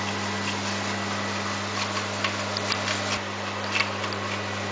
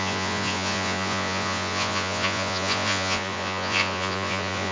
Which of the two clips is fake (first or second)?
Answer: second